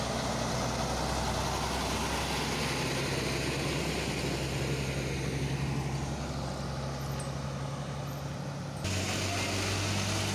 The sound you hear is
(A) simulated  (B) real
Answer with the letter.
B